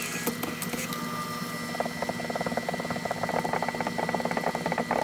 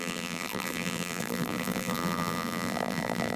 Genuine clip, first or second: first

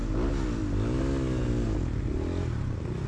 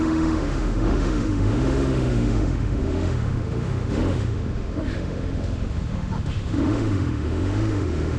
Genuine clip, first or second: first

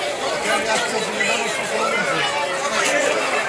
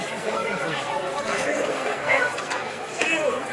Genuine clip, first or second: first